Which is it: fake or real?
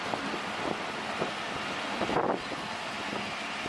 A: real